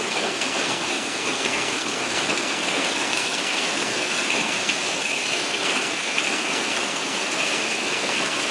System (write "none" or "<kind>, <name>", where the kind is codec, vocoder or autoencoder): codec, SNAC